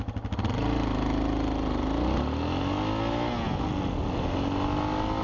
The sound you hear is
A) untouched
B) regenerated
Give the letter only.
A